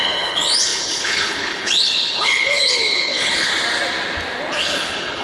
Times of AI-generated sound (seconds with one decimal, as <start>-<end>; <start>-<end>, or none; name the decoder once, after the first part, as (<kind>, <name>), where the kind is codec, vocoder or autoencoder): 0.0-3.5 (codec, HILCodec); 4.6-5.2